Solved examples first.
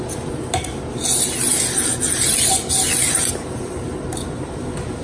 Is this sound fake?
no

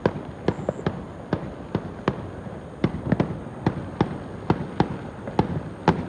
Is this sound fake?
no